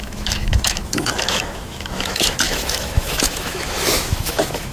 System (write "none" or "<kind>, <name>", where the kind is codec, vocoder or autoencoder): autoencoder, DAC-VAE